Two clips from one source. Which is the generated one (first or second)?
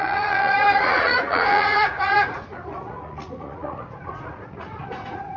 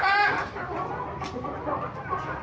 first